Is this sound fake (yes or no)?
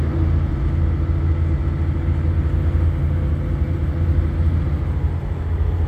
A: no